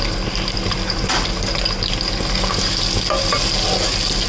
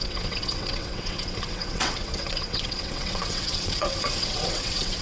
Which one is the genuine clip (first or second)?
first